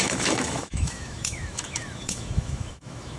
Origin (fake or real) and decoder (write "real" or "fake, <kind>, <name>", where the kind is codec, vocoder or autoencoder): fake, autoencoder, DAC-VAE